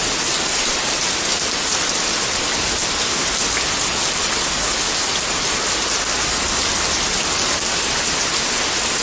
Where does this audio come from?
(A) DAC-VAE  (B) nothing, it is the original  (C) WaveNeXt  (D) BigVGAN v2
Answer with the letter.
B